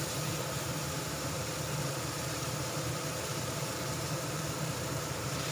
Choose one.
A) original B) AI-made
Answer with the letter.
B